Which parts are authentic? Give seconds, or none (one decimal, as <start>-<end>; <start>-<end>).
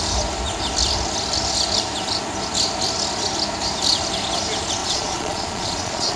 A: 0.0-4.8